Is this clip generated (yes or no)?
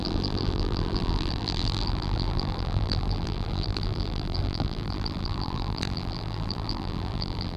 yes